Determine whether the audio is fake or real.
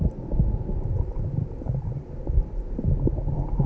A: real